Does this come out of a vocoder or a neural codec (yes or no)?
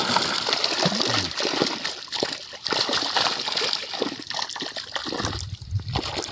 no